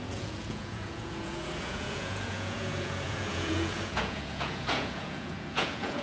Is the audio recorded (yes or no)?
no